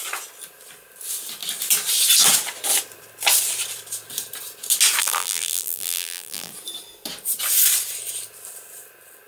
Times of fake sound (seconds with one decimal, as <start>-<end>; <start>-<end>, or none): 5.0-6.5